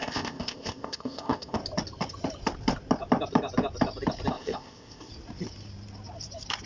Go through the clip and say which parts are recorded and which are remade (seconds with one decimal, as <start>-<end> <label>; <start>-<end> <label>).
0.0-1.6 remade; 1.6-4.3 recorded; 4.3-5.1 remade; 5.1-6.7 recorded